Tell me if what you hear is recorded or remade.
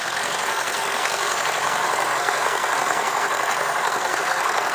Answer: remade